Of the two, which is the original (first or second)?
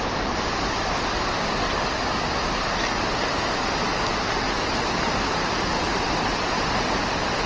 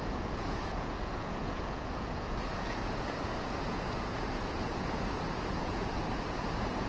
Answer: first